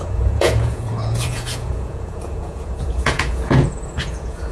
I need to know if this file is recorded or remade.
remade